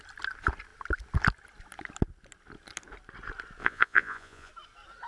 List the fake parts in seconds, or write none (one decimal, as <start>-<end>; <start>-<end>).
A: 3.6-4.5